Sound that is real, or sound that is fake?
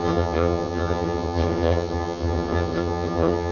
fake